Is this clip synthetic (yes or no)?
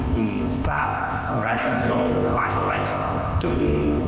yes